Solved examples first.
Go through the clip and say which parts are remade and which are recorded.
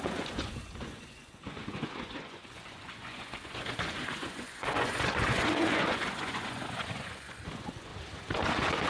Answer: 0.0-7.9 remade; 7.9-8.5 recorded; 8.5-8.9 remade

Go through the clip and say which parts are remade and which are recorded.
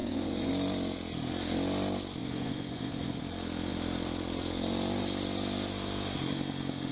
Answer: 0.0-0.5 remade; 0.5-2.2 recorded; 2.2-3.2 remade; 3.2-6.9 recorded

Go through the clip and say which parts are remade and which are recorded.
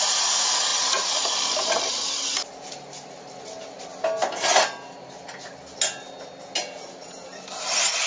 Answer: 0.0-8.1 recorded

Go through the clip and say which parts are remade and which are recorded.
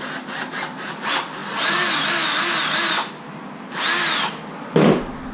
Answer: 0.0-5.3 recorded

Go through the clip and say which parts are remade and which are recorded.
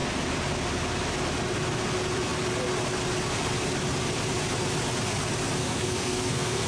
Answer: 0.0-5.6 recorded; 5.6-6.7 remade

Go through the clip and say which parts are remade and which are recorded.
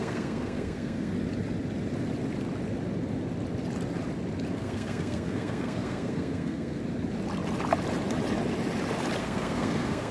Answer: 0.0-1.1 remade; 1.1-4.5 recorded; 4.5-6.8 remade; 6.8-9.2 recorded; 9.2-10.1 remade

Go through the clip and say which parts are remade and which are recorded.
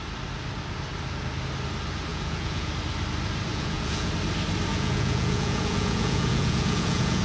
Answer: 0.0-2.1 recorded; 2.1-2.7 remade; 2.7-3.5 recorded; 3.5-4.1 remade; 4.1-4.7 recorded; 4.7-7.2 remade